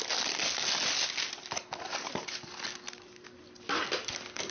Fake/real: real